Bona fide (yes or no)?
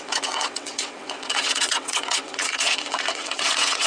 no